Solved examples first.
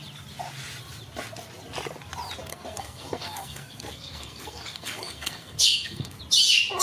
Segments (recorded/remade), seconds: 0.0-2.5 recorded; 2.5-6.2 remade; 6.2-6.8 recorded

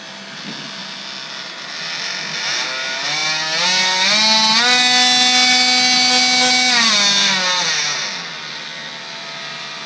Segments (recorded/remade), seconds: 0.0-9.9 recorded

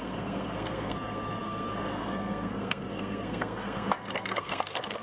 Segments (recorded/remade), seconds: 0.0-5.0 remade

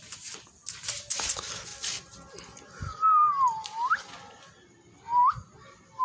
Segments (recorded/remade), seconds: 0.0-6.0 recorded

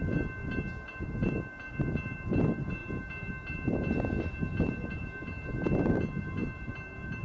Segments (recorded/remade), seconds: 0.0-0.4 recorded; 0.4-0.9 remade; 0.9-6.4 recorded; 6.4-7.2 remade

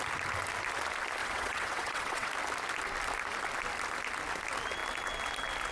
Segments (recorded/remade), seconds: 0.0-1.2 recorded; 1.2-2.3 remade; 2.3-5.7 recorded

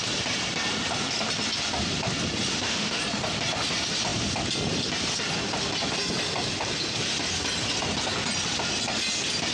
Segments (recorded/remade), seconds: 0.0-2.5 recorded; 2.5-3.0 remade; 3.0-9.5 recorded

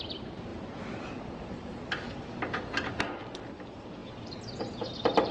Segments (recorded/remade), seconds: 0.0-5.3 recorded